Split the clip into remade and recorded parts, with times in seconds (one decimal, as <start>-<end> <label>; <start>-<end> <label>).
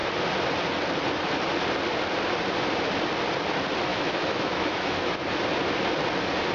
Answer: 0.0-3.9 recorded; 3.9-5.2 remade; 5.2-6.5 recorded